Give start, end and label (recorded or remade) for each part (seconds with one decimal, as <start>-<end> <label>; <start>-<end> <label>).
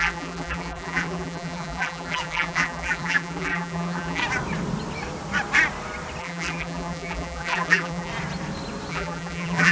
0.0-4.2 remade; 4.2-6.2 recorded; 6.2-8.1 remade; 8.1-8.9 recorded; 8.9-9.7 remade